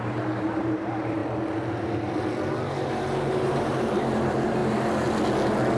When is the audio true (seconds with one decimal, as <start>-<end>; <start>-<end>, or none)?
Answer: 1.2-3.3; 4.6-5.8